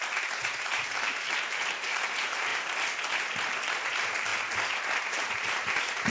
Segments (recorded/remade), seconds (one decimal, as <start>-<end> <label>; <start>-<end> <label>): 0.0-2.5 remade; 2.5-3.9 recorded; 3.9-4.3 remade; 4.3-5.1 recorded; 5.1-6.1 remade

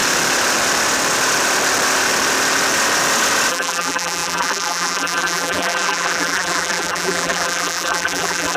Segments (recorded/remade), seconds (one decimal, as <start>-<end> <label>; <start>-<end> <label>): 0.0-3.5 recorded; 3.5-8.6 remade